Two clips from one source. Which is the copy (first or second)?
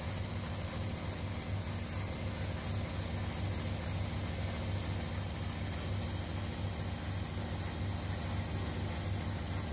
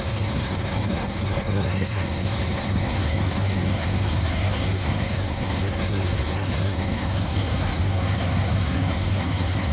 second